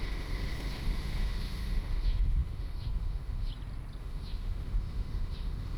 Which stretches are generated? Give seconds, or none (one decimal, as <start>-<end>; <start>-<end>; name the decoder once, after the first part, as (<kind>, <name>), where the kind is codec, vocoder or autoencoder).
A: 0.0-3.5 (autoencoder, DAC-VAE); 4.0-5.8

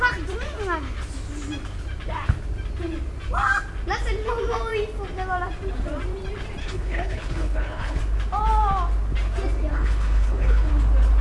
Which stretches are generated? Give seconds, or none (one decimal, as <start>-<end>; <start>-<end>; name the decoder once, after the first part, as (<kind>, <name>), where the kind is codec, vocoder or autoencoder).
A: 6.6-8.0 (codec, HILCodec); 9.7-10.7

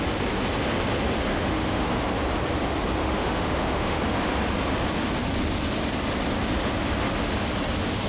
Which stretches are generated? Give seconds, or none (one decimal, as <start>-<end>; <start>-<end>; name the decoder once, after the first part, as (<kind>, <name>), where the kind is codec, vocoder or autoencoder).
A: 1.3-1.9 (autoencoder, DAC-VAE); 3.0-4.0

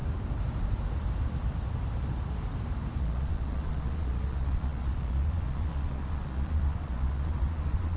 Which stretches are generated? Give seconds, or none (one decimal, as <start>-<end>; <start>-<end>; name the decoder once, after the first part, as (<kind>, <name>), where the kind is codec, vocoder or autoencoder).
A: 3.0-8.0 (vocoder, Vocos)